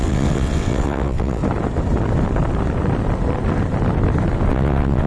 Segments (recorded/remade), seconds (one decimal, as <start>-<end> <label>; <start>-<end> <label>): 0.0-1.4 remade; 1.4-4.5 recorded; 4.5-5.1 remade